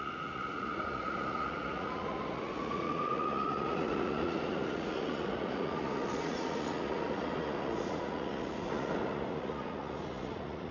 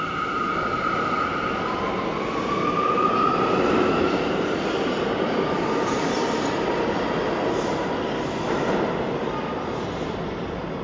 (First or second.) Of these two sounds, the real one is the second